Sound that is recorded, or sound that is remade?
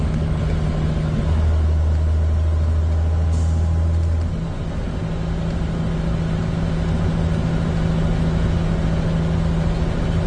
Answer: recorded